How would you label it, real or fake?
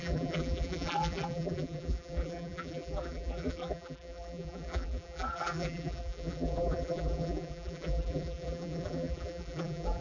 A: fake